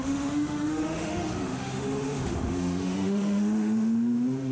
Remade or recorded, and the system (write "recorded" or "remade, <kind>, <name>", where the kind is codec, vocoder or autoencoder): remade, autoencoder, DAC-VAE